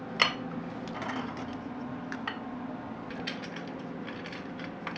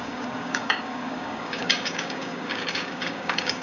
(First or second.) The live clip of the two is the first